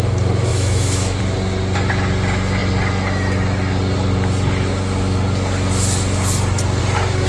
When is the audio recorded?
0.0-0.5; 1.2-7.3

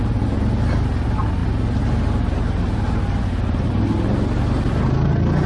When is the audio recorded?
0.0-5.5

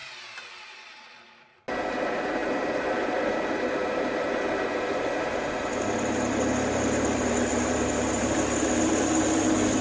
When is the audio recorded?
0.0-1.8

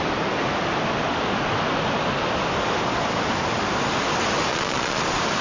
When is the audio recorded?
0.0-4.5; 5.0-5.4

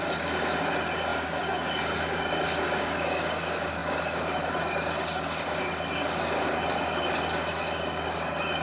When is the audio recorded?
none

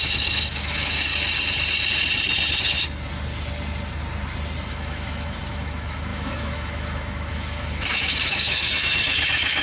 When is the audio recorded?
1.1-4.7

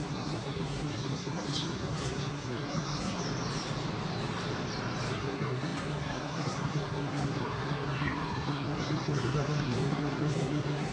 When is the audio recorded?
3.2-5.1

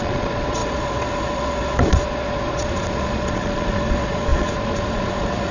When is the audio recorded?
none